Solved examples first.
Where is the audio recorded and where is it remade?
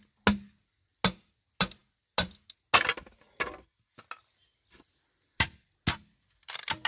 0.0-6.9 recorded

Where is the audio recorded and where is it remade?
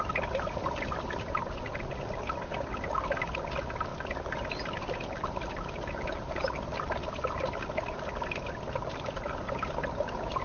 0.0-10.4 recorded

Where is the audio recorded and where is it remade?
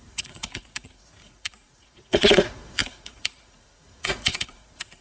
0.0-5.0 remade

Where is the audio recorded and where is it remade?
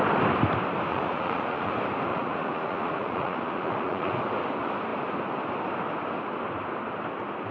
0.0-0.9 recorded; 0.9-1.7 remade; 1.7-2.1 recorded; 2.1-4.2 remade; 4.2-7.5 recorded